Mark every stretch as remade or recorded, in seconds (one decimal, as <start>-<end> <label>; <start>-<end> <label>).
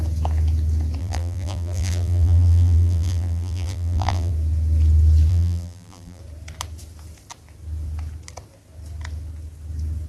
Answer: 0.0-1.0 recorded; 1.0-4.3 remade; 4.3-5.3 recorded; 5.3-6.2 remade; 6.2-10.1 recorded